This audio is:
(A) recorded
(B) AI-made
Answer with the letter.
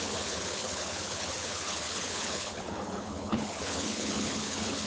B